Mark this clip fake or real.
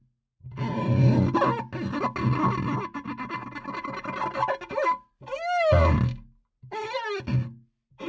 real